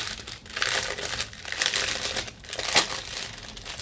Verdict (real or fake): real